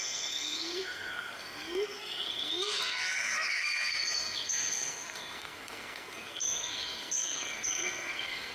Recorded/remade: remade